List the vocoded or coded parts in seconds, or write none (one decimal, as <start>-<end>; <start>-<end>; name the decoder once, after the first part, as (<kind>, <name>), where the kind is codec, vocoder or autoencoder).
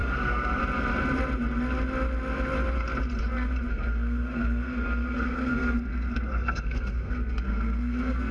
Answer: 0.0-0.6 (codec, SNAC); 3.7-8.3